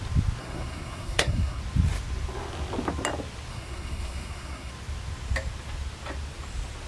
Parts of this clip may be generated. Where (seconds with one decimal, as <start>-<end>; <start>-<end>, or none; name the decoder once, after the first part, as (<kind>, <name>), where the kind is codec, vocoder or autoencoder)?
0.4-1.6 (codec, SNAC); 3.5-4.7